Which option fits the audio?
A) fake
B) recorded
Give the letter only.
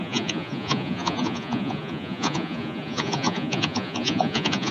A